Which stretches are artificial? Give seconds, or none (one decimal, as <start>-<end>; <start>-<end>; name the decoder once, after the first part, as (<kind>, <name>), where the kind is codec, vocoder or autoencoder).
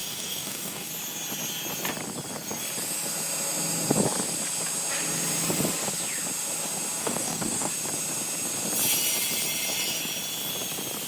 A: 0.0-0.9 (codec, DAC); 7.0-7.7